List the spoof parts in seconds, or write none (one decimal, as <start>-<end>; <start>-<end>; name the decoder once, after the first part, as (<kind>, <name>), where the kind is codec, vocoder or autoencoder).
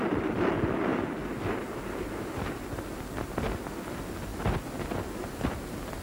none